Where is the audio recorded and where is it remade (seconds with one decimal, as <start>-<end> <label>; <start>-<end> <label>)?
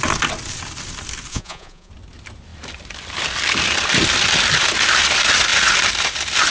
0.0-1.3 recorded; 1.3-1.9 remade; 1.9-6.5 recorded